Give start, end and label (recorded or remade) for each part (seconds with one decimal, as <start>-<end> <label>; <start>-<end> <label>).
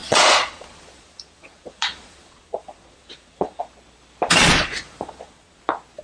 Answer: 0.0-3.6 remade; 3.6-4.4 recorded; 4.4-5.6 remade; 5.6-6.0 recorded